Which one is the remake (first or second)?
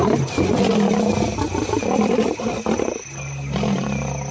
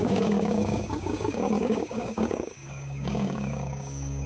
second